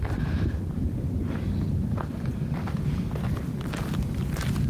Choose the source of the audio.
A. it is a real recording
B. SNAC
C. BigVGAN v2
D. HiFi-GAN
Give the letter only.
A